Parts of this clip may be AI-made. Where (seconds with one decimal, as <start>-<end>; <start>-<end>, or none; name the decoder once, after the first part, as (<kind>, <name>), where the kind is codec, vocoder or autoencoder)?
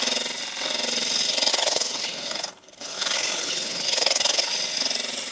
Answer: 1.5-4.5 (codec, HILCodec)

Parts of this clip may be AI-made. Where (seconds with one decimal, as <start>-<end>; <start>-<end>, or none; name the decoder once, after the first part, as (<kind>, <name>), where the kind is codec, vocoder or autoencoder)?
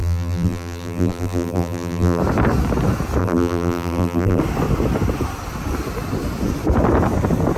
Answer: 0.0-2.2 (vocoder, BigVGAN v2); 3.2-4.4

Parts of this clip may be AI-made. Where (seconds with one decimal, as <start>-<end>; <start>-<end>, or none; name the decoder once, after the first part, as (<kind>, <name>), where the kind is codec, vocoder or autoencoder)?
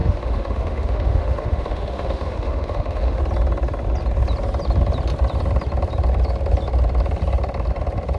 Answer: 0.0-3.2 (autoencoder, DAC-VAE)